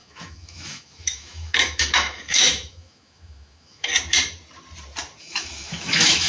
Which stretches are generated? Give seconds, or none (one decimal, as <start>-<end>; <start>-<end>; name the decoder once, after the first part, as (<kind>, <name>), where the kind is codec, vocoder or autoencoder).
0.0-3.9 (autoencoder, DAC-VAE); 5.2-6.3